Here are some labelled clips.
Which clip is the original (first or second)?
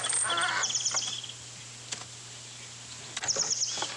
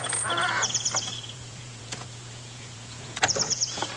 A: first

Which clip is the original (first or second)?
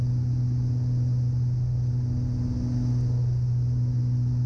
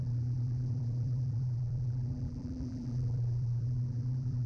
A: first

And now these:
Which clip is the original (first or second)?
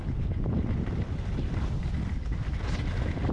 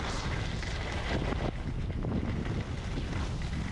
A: second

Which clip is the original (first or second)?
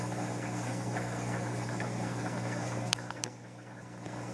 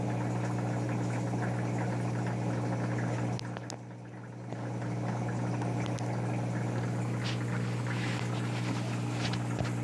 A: second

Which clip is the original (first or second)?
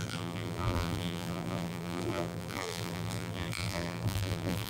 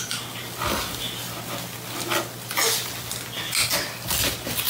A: second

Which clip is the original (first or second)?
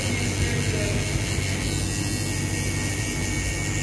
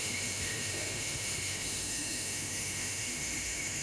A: first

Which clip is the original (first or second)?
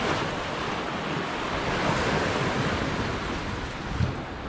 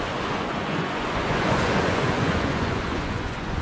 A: first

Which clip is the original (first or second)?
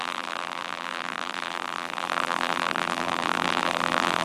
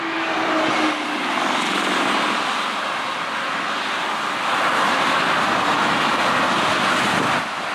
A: second